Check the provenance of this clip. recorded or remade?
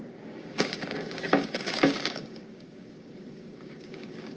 remade